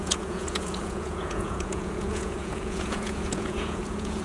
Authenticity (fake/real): fake